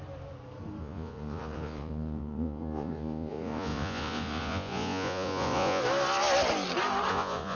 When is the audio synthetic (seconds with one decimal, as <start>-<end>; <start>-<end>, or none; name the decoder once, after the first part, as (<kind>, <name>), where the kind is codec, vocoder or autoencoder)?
0.8-5.8 (vocoder, Vocos); 7.1-7.6